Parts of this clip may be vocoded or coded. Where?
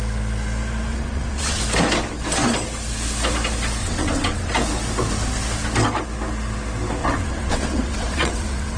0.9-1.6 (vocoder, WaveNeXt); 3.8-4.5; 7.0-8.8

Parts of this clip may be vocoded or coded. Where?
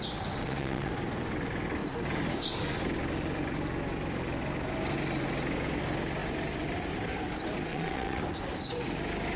0.4-0.9 (vocoder, WaveNeXt); 7.7-8.2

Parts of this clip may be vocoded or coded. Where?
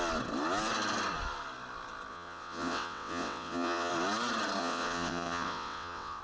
2.1-3.9 (vocoder, WaveNeXt); 4.6-6.2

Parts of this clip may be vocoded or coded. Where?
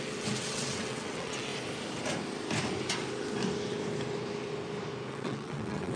0.0-1.5 (vocoder, WaveNeXt); 5.1-6.0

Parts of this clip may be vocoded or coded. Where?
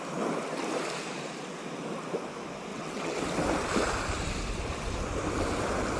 2.7-3.2 (vocoder, WaveNeXt)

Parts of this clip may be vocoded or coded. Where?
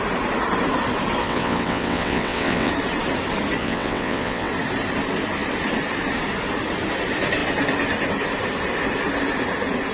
1.2-2.7 (vocoder, WaveNeXt); 3.6-4.5